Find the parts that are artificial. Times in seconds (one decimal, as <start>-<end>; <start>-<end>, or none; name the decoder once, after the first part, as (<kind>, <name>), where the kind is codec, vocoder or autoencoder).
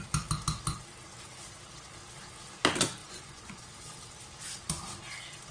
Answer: 3.0-3.6 (vocoder, Vocos)